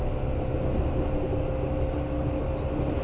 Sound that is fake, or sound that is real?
real